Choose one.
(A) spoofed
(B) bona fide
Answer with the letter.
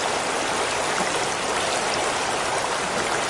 B